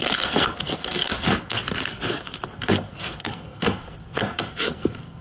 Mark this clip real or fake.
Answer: fake